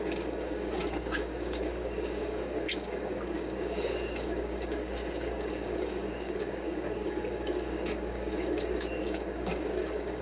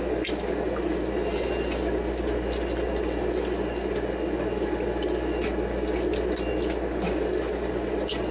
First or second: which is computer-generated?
first